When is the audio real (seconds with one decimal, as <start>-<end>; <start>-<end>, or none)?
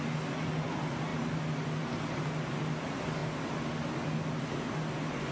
0.0-1.1; 2.0-5.3